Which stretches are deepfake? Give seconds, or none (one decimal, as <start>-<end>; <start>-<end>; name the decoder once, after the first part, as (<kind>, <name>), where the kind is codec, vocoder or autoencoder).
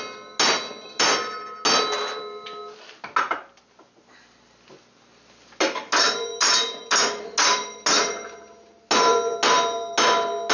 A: none